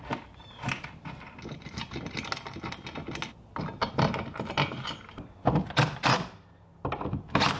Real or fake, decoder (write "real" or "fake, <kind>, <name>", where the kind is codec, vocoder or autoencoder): real